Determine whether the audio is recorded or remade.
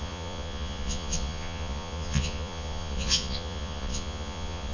remade